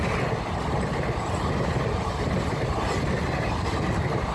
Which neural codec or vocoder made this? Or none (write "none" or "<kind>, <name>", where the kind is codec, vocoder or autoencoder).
none